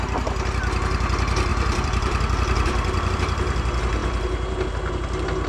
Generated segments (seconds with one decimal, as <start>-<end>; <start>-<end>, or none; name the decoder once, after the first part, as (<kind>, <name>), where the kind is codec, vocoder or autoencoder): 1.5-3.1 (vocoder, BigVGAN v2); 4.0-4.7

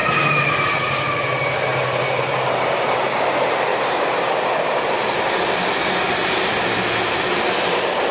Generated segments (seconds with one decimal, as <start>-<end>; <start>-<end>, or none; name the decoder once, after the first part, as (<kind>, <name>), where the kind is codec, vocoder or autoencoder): 0.0-0.5 (vocoder, BigVGAN v2); 1.7-3.0; 3.7-4.5

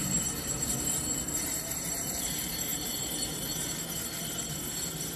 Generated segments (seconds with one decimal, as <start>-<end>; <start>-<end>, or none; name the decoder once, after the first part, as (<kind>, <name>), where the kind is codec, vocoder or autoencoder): 0.0-5.2 (vocoder, BigVGAN v2)